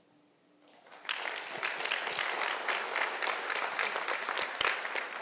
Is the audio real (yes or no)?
yes